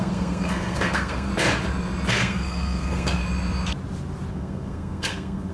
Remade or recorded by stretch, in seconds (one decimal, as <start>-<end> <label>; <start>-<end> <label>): 0.0-1.3 remade; 1.3-2.1 recorded; 2.1-3.2 remade; 3.2-4.3 recorded; 4.3-5.5 remade